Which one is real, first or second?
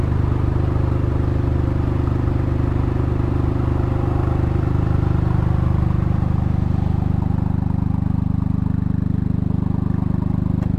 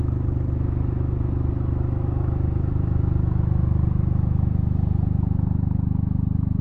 first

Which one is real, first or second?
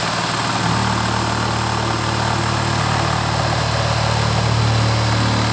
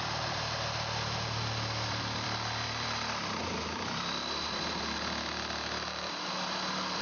first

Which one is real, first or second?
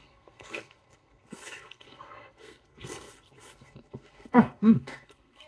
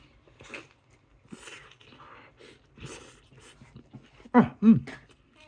second